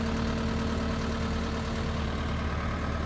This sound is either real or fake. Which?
real